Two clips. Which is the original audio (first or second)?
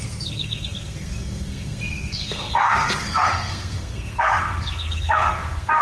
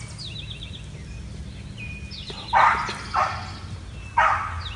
second